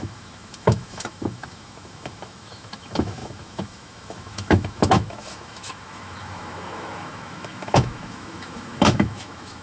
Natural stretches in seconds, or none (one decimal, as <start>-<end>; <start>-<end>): none